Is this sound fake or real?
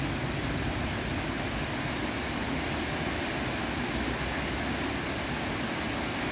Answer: real